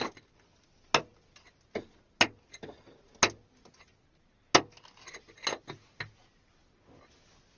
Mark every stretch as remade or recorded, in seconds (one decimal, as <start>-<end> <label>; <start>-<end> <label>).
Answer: 0.0-7.6 recorded